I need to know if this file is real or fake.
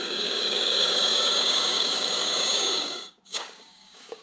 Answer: fake